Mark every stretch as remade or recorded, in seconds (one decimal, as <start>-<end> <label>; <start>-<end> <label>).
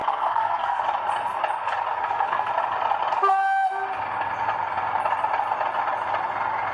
0.0-0.8 remade; 0.8-2.0 recorded; 2.0-2.5 remade; 2.5-6.7 recorded